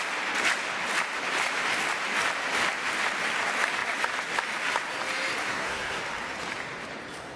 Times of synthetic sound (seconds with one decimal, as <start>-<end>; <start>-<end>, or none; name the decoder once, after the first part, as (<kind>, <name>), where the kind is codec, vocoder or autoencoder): 5.5-6.0 (codec, SNAC)